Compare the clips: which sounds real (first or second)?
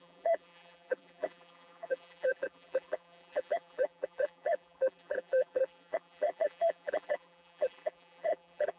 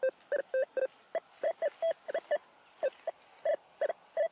second